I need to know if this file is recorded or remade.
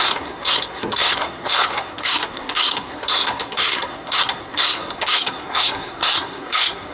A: remade